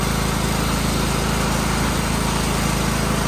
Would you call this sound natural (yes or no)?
yes